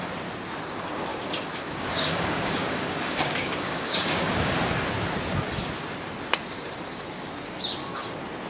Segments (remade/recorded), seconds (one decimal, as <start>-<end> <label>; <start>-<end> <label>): 0.0-1.1 recorded; 1.1-4.5 remade; 4.5-8.5 recorded